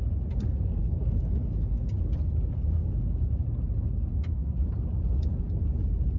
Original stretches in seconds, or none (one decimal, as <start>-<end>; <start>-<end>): 0.0-0.8; 1.9-6.2